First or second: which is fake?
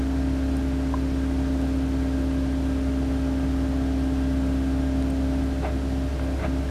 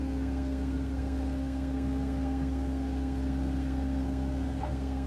second